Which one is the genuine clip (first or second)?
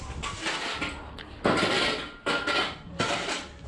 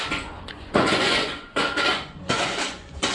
first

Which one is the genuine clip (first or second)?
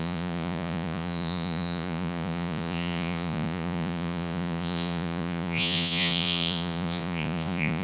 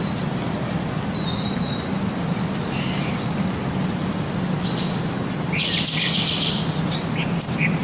second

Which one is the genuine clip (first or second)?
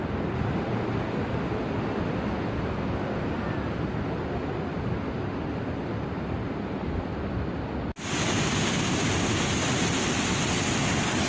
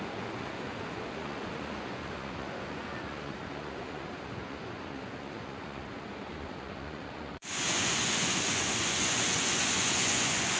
first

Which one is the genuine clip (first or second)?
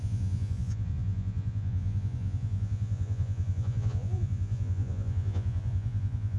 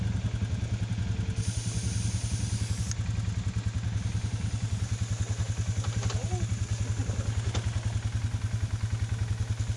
second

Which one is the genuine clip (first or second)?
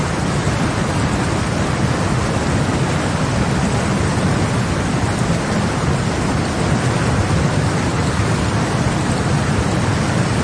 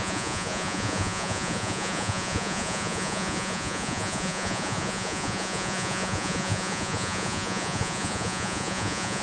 first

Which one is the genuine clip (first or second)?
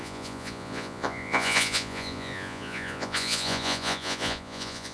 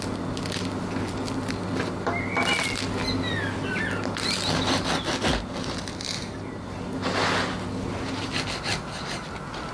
second